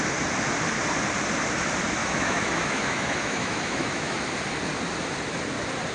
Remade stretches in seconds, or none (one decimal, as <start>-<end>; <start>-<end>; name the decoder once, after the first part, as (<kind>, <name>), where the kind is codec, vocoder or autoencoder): 2.0-4.2 (autoencoder, DAC-VAE)